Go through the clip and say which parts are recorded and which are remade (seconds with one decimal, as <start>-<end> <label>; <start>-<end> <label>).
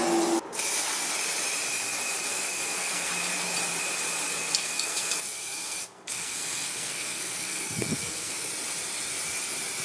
0.0-2.3 recorded; 2.3-3.1 remade; 3.1-4.3 recorded; 4.3-8.5 remade; 8.5-9.8 recorded